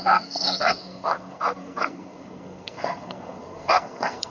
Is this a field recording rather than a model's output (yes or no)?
no